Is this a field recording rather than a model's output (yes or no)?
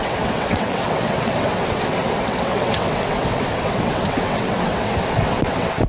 no